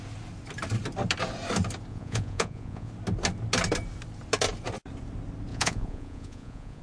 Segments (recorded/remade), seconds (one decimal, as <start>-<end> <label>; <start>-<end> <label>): 0.0-1.9 recorded; 1.9-2.9 remade; 2.9-5.5 recorded; 5.5-6.8 remade